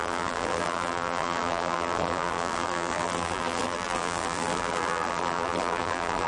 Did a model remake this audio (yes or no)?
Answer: yes